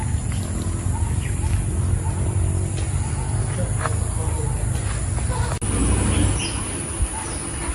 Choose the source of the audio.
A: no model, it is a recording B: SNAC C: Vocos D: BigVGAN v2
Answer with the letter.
A